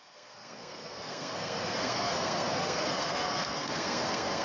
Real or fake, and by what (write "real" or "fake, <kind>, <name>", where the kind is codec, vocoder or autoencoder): fake, codec, SNAC